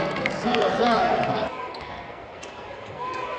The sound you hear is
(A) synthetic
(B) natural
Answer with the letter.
A